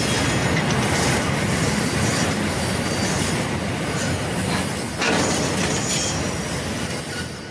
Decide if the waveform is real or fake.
real